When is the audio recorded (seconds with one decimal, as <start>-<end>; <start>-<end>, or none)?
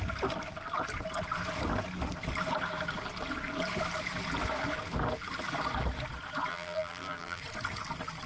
0.0-6.5; 7.4-8.3